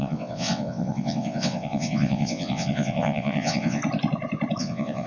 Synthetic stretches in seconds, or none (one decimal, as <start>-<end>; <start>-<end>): 0.0-3.8; 4.6-5.1